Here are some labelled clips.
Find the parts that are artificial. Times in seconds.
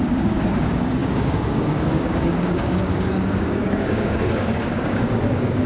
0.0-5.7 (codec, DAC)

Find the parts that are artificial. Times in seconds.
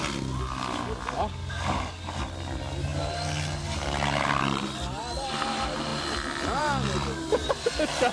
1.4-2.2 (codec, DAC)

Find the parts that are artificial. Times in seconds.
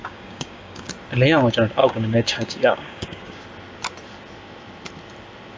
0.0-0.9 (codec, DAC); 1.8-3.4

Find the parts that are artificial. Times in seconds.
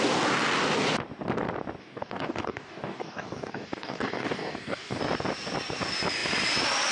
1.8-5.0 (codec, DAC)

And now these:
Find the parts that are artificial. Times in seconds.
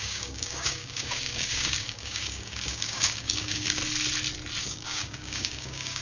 0.0-3.8 (codec, DAC); 4.6-6.0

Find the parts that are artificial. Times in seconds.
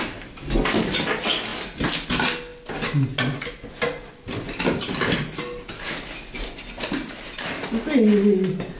none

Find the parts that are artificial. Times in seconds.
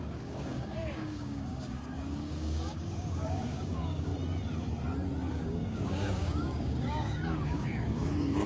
0.0-4.1 (codec, DAC); 5.3-8.5